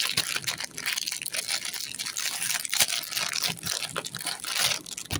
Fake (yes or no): no